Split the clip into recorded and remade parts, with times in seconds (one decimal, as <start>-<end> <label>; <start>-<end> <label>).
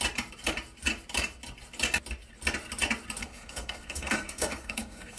0.0-3.2 recorded; 3.2-5.2 remade